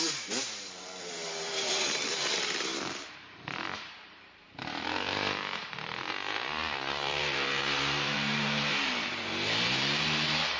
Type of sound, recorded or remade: remade